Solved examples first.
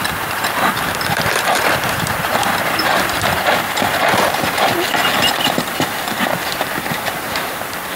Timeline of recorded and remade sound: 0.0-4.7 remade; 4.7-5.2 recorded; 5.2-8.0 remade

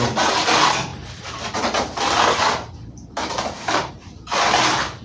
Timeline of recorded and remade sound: 0.0-0.9 recorded; 0.9-3.9 remade; 3.9-5.0 recorded

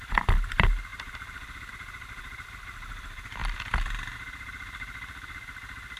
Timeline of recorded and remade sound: 0.0-6.0 recorded

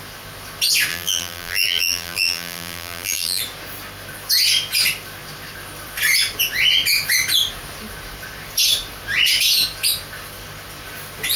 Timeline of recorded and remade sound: 0.0-0.9 recorded; 0.9-3.4 remade; 3.4-11.4 recorded

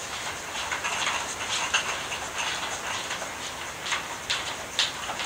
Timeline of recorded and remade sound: 0.0-5.3 recorded

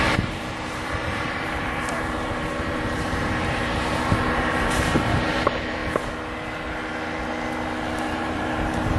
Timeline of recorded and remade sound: 0.0-5.8 remade; 5.8-8.0 recorded; 8.0-9.0 remade